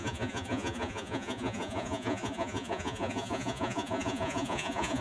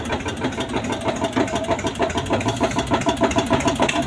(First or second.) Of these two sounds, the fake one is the first